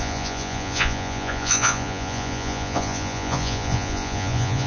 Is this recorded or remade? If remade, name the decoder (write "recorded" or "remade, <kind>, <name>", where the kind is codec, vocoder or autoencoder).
remade, vocoder, Vocos